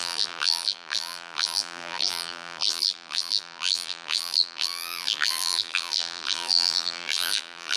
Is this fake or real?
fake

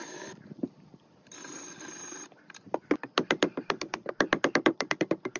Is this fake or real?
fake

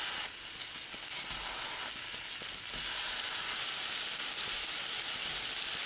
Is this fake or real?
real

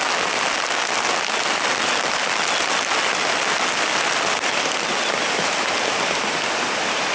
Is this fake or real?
real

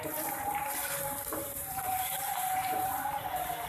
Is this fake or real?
fake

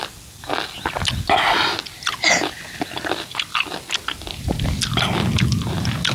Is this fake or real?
real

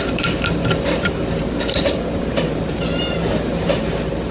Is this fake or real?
fake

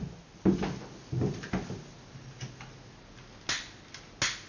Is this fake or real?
real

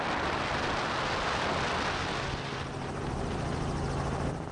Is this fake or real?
real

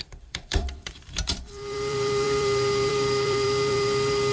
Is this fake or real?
fake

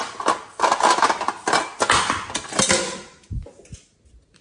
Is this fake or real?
real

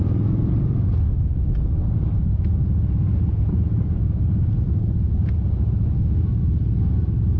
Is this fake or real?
real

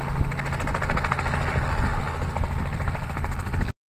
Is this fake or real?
real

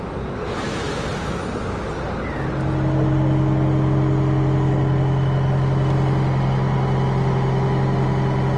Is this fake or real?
real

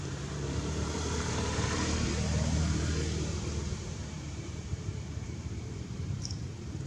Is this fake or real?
fake